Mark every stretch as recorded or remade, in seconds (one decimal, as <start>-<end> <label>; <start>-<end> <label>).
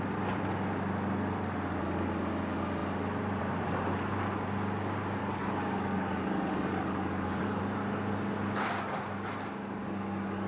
0.0-5.2 recorded; 5.2-7.6 remade; 7.6-9.8 recorded; 9.8-10.5 remade